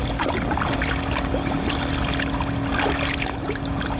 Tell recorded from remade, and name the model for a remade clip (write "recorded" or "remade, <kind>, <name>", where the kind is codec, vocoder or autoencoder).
recorded